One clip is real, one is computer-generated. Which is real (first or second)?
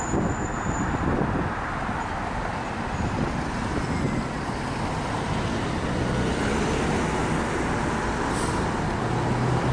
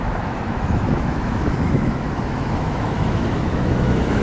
first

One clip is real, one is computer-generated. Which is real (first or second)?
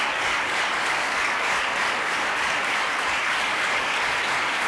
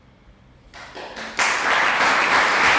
second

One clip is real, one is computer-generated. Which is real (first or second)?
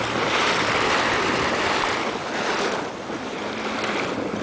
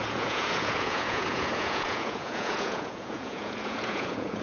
first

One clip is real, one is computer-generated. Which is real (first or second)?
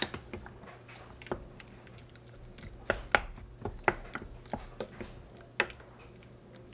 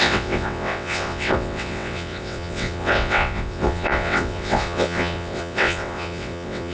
first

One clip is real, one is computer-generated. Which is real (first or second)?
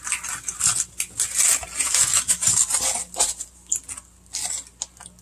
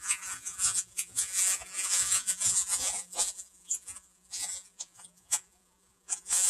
first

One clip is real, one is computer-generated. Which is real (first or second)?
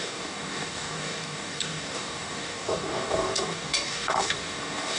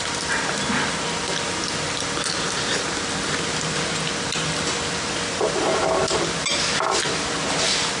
second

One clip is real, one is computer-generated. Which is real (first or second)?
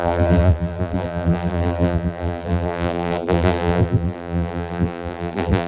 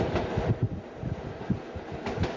second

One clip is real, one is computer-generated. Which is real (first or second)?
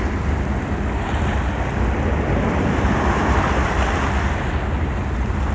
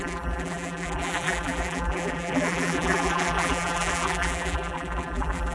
first